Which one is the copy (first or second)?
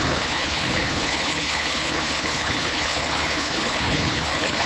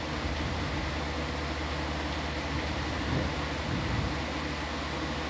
first